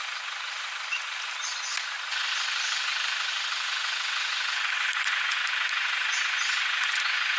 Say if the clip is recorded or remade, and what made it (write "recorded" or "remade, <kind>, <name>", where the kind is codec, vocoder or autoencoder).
recorded